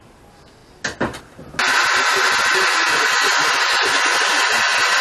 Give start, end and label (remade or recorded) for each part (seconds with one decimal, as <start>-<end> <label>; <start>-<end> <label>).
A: 0.0-2.1 recorded; 2.1-4.2 remade; 4.2-5.0 recorded